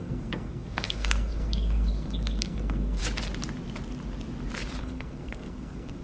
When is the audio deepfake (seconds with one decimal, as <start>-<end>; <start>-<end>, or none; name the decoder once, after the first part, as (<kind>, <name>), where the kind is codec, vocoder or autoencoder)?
0.0-3.0 (codec, SNAC); 4.8-6.0